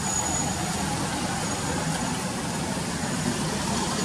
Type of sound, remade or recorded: recorded